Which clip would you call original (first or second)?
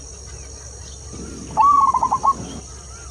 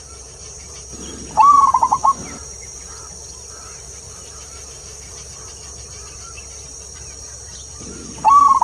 first